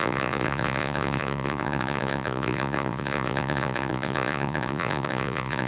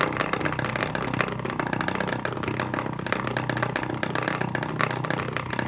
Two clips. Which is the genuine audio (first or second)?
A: second